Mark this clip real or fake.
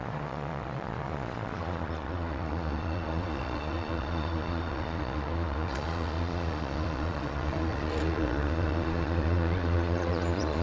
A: fake